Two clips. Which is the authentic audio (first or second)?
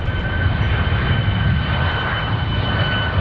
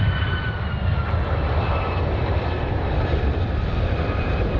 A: first